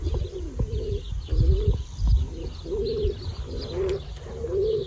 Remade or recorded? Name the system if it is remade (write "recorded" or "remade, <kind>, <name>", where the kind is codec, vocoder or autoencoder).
recorded